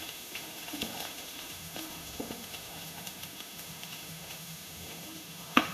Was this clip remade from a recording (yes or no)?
yes